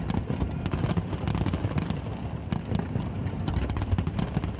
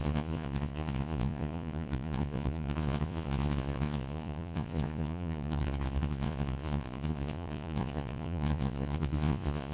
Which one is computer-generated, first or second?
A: second